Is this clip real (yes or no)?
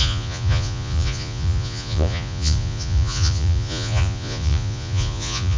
no